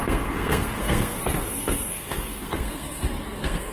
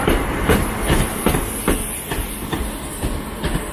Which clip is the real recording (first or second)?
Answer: second